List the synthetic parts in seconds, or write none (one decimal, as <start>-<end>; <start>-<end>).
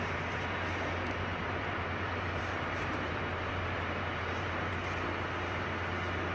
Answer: 1.3-4.7